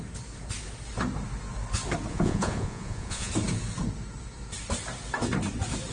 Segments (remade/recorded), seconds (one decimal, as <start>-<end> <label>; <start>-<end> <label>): 0.0-2.1 recorded; 2.1-3.3 remade; 3.3-5.9 recorded